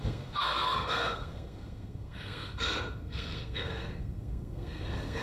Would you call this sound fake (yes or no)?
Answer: yes